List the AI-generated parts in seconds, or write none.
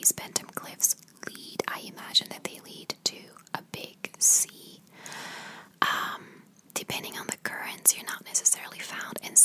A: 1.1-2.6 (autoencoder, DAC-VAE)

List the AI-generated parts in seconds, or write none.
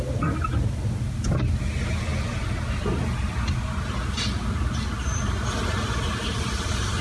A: none